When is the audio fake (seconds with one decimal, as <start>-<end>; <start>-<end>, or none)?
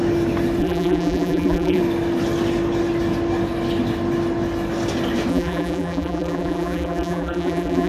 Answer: 0.6-1.8; 5.3-7.9